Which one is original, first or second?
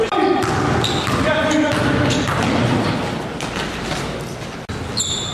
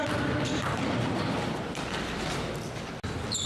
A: first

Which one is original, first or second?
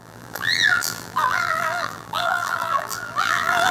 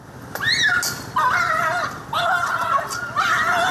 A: second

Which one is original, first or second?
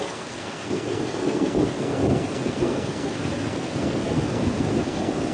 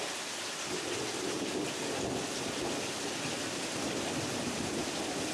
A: second